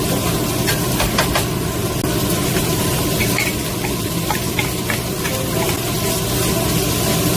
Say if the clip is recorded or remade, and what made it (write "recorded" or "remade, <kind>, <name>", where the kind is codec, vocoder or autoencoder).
recorded